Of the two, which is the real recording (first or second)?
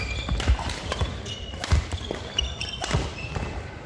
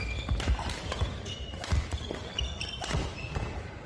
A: second